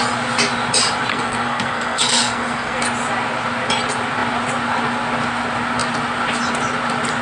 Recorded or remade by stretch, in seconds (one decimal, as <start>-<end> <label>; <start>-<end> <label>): 0.0-1.1 recorded; 1.1-2.8 remade; 2.8-7.2 recorded